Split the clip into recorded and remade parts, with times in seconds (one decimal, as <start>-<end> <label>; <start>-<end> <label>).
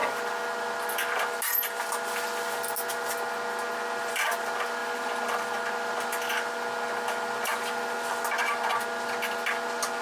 0.0-10.0 recorded